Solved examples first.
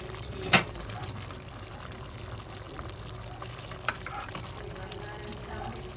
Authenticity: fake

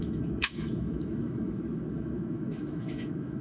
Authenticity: fake